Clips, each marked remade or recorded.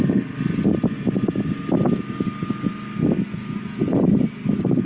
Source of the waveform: recorded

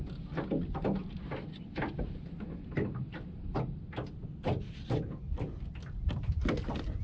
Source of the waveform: recorded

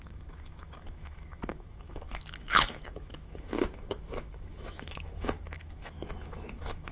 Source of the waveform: remade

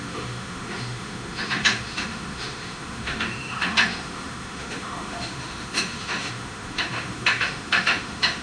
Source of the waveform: remade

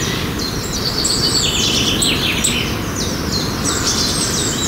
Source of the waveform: recorded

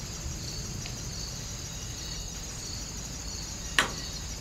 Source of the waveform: recorded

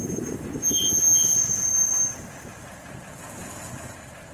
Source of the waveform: recorded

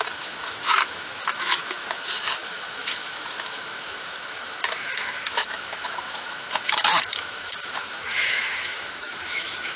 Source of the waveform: remade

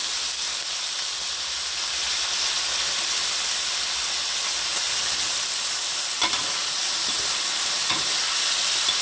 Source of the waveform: recorded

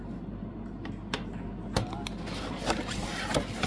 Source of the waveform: recorded